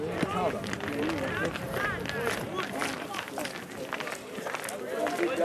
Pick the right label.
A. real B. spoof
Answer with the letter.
A